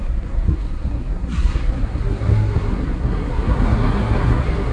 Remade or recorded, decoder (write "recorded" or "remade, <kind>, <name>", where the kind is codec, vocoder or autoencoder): remade, codec, SNAC